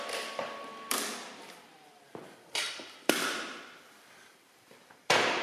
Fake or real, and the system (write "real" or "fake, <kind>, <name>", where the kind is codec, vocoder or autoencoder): fake, vocoder, BigVGAN v2